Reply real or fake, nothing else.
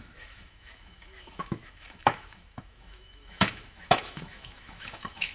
fake